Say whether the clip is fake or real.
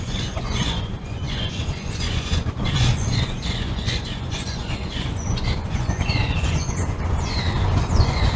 fake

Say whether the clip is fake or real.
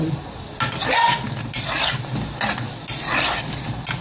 real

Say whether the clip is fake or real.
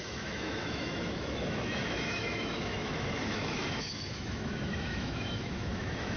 fake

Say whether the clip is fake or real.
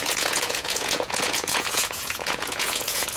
fake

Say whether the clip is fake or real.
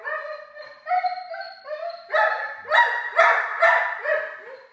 real